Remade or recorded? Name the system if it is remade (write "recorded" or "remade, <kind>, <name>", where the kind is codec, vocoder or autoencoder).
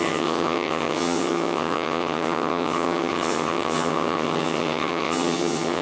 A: remade, vocoder, HiFi-GAN